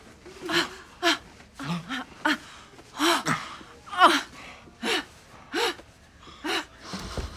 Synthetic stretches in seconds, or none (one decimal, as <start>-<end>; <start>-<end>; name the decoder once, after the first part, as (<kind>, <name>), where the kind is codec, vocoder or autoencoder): none